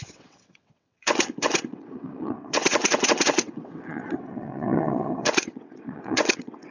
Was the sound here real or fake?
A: fake